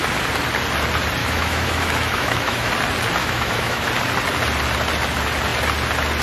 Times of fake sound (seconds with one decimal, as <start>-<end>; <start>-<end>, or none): 1.2-2.7; 3.2-3.9